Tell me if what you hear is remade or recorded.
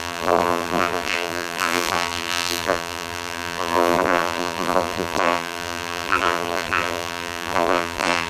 remade